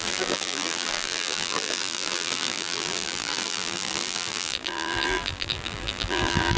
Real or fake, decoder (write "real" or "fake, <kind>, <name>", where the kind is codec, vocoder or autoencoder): fake, vocoder, BigVGAN v2